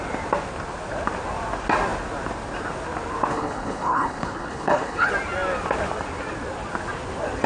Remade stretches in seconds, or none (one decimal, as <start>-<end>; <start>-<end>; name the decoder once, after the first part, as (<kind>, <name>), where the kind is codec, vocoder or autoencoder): 3.3-5.1 (codec, HILCodec)